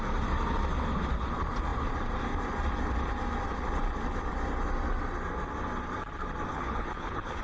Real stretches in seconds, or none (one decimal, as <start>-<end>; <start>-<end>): 0.0-6.5